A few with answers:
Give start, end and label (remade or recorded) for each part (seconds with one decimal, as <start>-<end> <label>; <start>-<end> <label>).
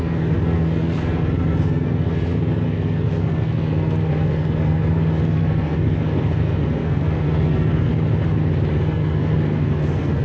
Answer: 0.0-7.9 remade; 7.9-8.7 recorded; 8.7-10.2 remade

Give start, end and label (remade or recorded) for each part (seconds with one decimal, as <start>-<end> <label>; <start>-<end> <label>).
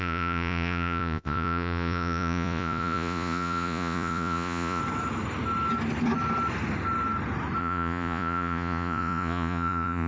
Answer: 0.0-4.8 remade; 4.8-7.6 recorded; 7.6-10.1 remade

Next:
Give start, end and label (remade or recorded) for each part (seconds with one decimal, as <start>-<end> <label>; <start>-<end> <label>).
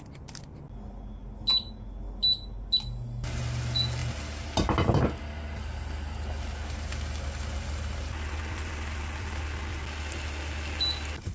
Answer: 0.0-11.3 recorded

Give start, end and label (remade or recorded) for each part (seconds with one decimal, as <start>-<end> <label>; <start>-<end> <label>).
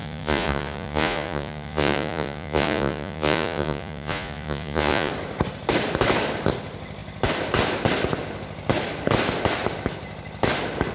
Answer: 0.0-5.1 remade; 5.1-10.9 recorded